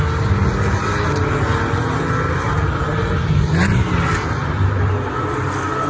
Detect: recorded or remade recorded